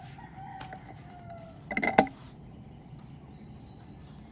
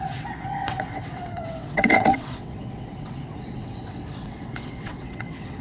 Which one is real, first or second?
first